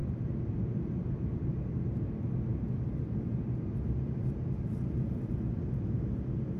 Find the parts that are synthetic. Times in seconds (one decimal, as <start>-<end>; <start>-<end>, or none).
none